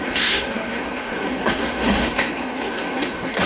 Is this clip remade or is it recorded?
remade